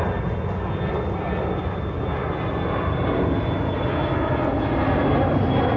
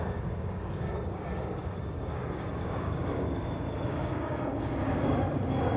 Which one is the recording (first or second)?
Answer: first